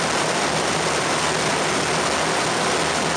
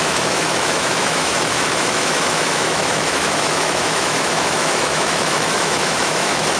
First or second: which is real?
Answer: first